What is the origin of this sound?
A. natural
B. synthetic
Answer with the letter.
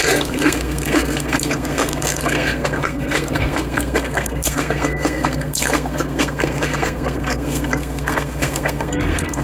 B